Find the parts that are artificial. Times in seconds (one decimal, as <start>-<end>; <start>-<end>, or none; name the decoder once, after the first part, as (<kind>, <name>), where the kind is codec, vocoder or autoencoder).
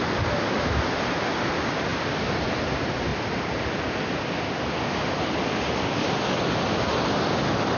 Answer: none